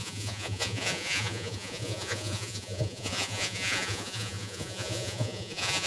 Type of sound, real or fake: fake